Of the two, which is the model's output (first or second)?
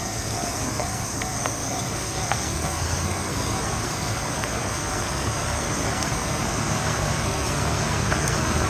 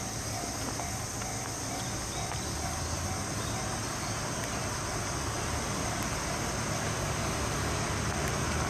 first